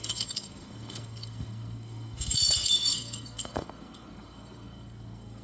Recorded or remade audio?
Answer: remade